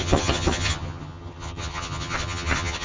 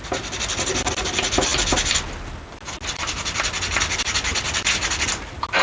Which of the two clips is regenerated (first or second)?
first